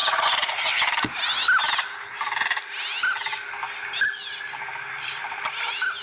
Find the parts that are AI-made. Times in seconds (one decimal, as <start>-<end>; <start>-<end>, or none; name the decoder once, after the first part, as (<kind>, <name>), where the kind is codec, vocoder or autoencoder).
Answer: none